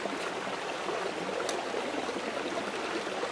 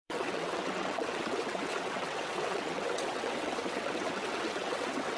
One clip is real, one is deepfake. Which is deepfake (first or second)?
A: second